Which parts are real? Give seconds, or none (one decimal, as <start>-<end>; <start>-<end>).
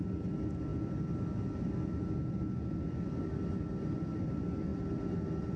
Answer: 0.0-5.6